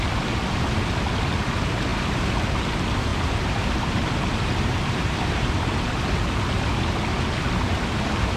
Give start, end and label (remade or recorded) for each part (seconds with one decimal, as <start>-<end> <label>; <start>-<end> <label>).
0.0-3.1 recorded; 3.1-5.9 remade; 5.9-8.4 recorded